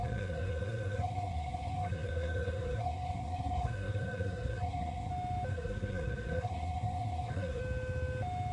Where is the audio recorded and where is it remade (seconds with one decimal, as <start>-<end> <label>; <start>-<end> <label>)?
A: 0.0-5.1 remade; 5.1-5.5 recorded; 5.5-7.6 remade; 7.6-8.5 recorded